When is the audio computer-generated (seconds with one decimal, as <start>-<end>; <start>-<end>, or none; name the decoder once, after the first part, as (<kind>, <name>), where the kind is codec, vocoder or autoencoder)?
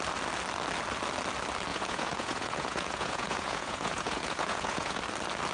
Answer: 1.7-5.0 (vocoder, Vocos)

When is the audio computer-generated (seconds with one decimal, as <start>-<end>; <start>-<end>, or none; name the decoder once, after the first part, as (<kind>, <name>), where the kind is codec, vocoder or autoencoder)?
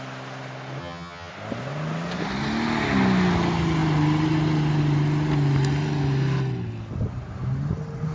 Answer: 0.8-1.3 (vocoder, HiFi-GAN)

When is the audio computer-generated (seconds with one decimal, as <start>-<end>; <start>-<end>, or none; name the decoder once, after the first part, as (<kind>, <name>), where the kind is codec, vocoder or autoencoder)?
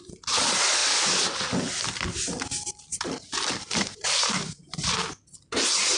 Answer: 2.9-4.9 (vocoder, BigVGAN v2)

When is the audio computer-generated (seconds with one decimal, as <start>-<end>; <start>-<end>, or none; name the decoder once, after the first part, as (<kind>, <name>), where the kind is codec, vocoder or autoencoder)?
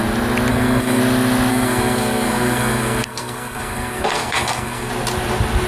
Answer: 0.5-1.0 (codec, SNAC); 1.5-4.9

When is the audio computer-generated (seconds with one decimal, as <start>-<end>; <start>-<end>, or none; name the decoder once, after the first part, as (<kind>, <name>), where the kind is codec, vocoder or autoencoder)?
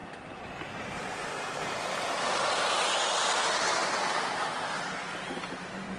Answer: none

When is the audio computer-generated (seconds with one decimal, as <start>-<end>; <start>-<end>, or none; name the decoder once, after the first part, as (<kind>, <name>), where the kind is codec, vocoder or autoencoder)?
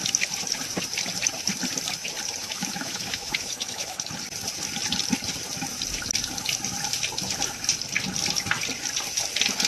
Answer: 2.4-4.1 (autoencoder, DAC-VAE)